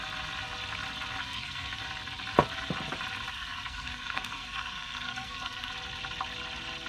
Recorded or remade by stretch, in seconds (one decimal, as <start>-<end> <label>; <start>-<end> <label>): 0.0-1.2 recorded; 1.2-1.8 remade; 1.8-3.3 recorded; 3.3-5.7 remade; 5.7-6.9 recorded

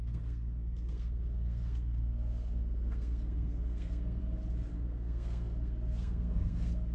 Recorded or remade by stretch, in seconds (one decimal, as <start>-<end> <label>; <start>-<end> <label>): 0.0-4.2 remade; 4.2-4.7 recorded; 4.7-6.9 remade

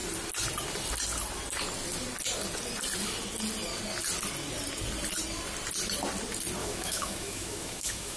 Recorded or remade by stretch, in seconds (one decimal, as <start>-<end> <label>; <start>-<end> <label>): 0.0-6.6 recorded; 6.6-8.2 remade

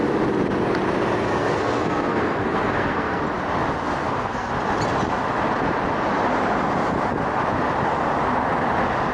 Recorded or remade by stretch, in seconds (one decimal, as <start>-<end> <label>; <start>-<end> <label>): 0.0-1.2 recorded; 1.2-3.2 remade; 3.2-4.0 recorded; 4.0-4.5 remade; 4.5-9.1 recorded

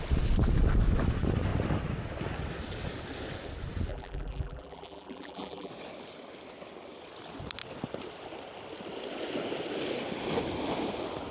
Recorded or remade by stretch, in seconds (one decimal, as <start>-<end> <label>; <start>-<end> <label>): 0.0-3.9 recorded; 3.9-5.7 remade; 5.7-11.3 recorded